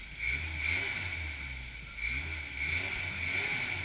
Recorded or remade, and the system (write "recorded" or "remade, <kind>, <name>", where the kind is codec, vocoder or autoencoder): recorded